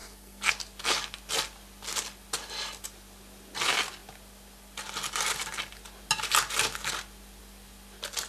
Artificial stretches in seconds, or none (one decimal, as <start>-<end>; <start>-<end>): 0.0-0.5